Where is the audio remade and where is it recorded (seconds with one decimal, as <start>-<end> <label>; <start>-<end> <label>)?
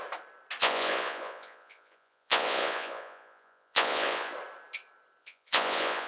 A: 0.0-0.6 recorded; 0.6-4.3 remade; 4.3-5.2 recorded; 5.2-6.1 remade